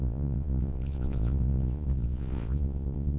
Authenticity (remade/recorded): remade